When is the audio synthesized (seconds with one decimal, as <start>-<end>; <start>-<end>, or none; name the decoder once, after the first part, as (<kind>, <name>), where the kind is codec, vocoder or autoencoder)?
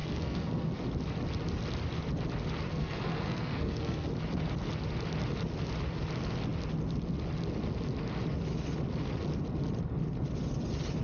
0.0-0.8 (codec, SNAC); 2.7-4.1